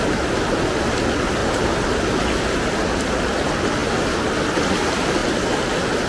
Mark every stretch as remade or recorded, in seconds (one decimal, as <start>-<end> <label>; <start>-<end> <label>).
0.0-1.4 recorded; 1.4-2.0 remade; 2.0-6.1 recorded